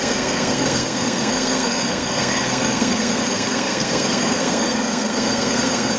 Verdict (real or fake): fake